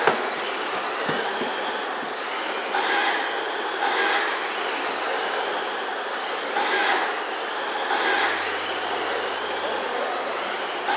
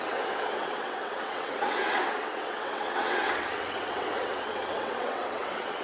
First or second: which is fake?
second